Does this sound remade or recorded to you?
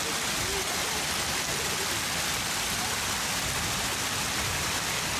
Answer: recorded